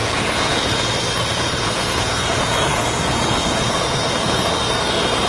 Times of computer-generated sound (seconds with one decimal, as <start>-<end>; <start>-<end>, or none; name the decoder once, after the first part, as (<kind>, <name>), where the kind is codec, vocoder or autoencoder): 0.0-0.9 (vocoder, Vocos); 1.3-4.5